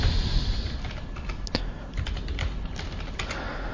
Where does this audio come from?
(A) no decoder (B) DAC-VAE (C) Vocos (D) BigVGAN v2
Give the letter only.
A